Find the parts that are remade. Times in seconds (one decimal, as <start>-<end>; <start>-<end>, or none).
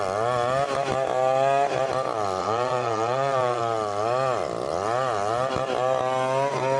2.4-3.6